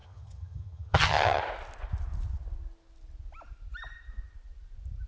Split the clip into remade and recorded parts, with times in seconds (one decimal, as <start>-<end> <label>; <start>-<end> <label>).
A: 0.0-1.4 remade; 1.4-5.1 recorded